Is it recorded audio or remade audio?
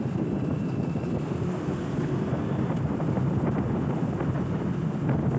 recorded